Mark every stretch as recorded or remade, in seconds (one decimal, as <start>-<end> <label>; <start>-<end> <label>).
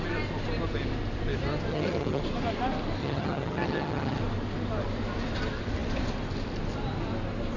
0.0-1.7 recorded; 1.7-2.2 remade; 2.2-3.0 recorded; 3.0-4.2 remade; 4.2-7.6 recorded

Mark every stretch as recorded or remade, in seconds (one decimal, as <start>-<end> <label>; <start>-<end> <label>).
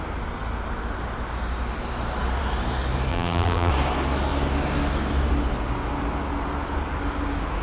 0.0-3.1 recorded; 3.1-3.7 remade; 3.7-7.6 recorded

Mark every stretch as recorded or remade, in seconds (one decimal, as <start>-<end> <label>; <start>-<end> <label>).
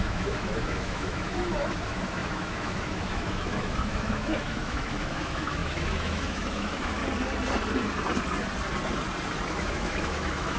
0.0-7.0 remade; 7.0-9.5 recorded; 9.5-10.6 remade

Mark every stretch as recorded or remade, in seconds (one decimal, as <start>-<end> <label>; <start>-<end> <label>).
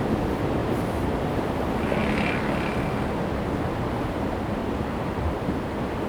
0.0-0.6 recorded; 0.6-1.4 remade; 1.4-4.6 recorded; 4.6-5.3 remade; 5.3-6.1 recorded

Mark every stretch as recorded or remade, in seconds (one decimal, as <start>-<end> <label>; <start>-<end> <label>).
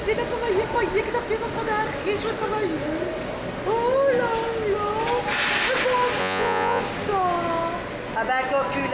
0.0-6.2 recorded; 6.2-6.8 remade; 6.8-8.9 recorded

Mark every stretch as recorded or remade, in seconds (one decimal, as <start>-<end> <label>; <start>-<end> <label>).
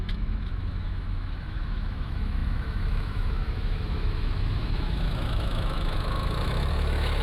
0.0-7.2 remade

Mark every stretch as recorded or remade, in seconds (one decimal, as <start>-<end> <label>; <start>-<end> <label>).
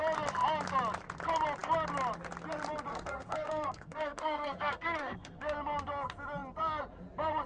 0.0-2.9 recorded; 2.9-5.4 remade; 5.4-7.5 recorded